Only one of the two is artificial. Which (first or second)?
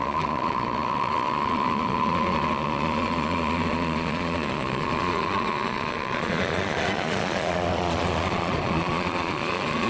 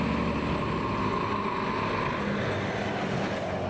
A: first